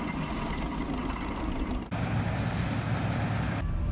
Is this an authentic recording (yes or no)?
yes